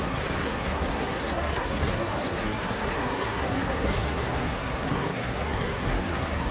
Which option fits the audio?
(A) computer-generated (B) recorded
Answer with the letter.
A